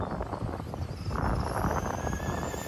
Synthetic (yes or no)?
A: no